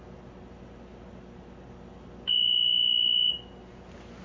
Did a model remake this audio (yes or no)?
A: no